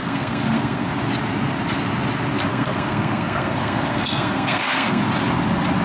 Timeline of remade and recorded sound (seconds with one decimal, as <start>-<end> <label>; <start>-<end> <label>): 0.0-0.9 remade; 0.9-2.5 recorded; 2.5-5.0 remade; 5.0-5.8 recorded